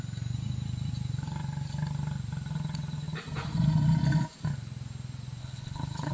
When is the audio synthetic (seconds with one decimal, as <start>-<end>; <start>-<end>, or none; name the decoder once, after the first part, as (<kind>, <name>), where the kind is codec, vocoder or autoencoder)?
5.4-6.1 (codec, HILCodec)